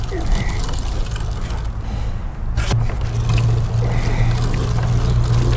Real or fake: real